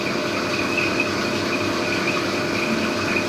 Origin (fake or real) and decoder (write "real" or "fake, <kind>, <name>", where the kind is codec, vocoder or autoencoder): real